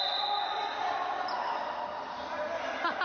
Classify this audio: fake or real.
real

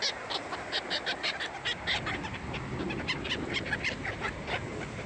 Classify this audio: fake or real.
real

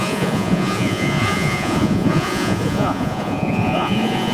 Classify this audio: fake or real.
fake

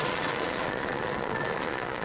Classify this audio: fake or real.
fake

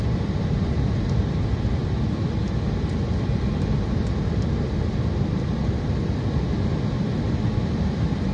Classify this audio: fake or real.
real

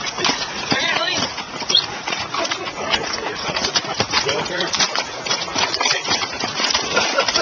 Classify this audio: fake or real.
fake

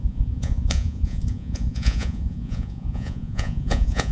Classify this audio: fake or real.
fake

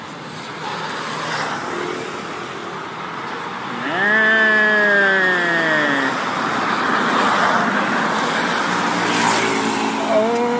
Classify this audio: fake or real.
real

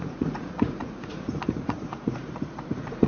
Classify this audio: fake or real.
fake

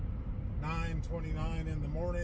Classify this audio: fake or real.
real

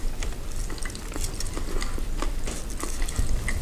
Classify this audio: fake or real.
real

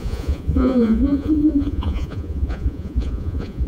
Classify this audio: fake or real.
fake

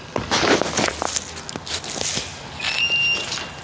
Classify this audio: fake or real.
real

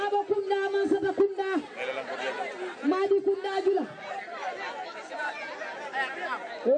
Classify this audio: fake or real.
real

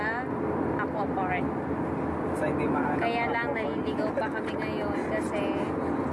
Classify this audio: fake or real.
real